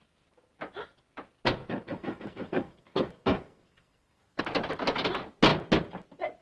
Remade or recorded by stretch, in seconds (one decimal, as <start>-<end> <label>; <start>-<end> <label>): 0.0-1.6 recorded; 1.6-4.4 remade; 4.4-6.4 recorded